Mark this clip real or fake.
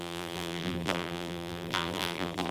fake